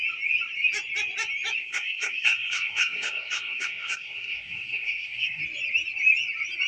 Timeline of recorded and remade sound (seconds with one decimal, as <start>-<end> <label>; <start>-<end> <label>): 0.0-1.6 recorded; 1.6-5.4 remade; 5.4-6.7 recorded